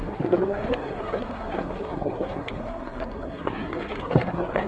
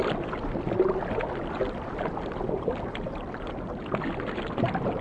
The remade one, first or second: first